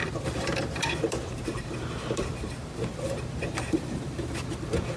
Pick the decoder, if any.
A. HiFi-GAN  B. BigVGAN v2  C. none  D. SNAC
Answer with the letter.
B